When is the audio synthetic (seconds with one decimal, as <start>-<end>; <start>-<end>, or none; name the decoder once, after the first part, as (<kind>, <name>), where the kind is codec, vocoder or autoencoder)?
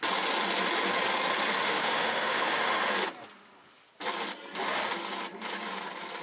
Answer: 1.6-2.8 (autoencoder, DAC-VAE)